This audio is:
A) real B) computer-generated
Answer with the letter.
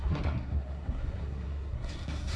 B